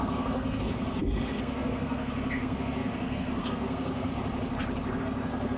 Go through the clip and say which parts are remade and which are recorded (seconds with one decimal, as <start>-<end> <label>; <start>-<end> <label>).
0.0-4.1 remade; 4.1-5.0 recorded; 5.0-5.6 remade